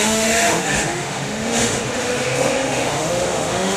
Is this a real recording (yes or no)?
no